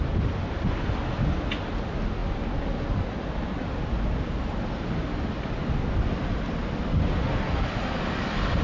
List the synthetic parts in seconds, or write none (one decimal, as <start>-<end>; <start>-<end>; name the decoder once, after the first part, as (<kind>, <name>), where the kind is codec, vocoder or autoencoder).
none